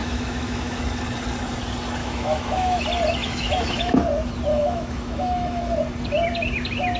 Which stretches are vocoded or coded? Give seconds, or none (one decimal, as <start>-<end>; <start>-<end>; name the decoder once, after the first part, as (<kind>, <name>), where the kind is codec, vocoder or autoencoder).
0.0-0.8 (autoencoder, DAC-VAE); 2.0-2.8; 3.2-3.9; 4.5-5.6